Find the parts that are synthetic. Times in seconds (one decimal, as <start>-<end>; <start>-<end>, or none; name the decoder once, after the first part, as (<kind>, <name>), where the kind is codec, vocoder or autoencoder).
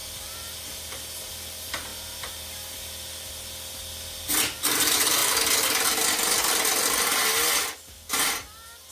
0.0-1.3 (vocoder, BigVGAN v2)